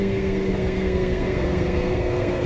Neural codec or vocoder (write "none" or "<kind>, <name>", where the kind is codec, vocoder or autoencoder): codec, SNAC